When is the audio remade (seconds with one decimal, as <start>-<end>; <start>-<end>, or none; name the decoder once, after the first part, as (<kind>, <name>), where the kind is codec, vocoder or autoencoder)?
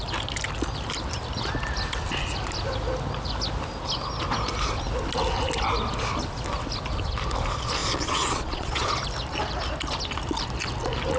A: 7.8-8.9 (vocoder, Vocos)